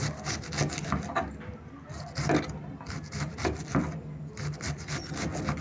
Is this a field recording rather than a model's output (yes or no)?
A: yes